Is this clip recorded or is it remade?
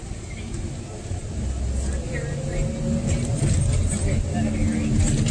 recorded